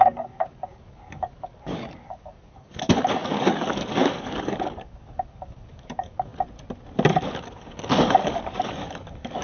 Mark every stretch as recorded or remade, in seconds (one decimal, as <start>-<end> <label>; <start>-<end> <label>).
0.0-6.3 remade; 6.3-7.1 recorded; 7.1-9.4 remade